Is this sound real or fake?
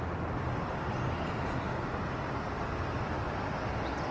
real